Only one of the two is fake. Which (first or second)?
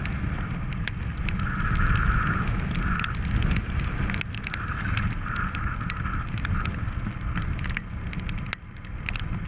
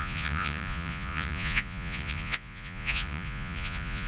second